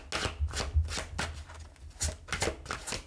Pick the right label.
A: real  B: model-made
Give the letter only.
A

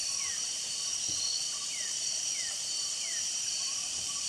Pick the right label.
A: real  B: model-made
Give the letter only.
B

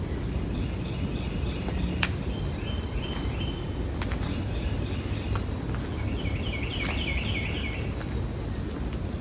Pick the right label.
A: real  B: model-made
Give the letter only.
A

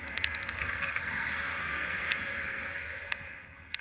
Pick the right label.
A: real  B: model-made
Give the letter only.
B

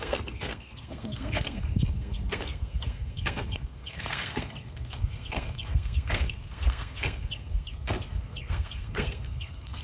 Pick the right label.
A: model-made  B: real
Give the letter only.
A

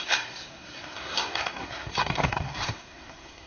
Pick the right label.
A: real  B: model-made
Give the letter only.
B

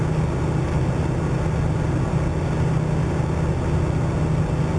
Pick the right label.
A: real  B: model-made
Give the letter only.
A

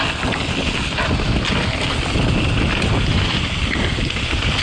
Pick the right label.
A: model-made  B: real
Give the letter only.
B